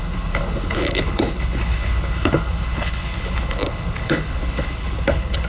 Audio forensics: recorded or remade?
remade